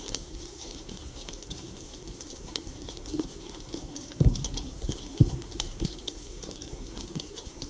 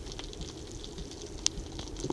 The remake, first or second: first